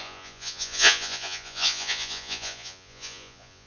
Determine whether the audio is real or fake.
fake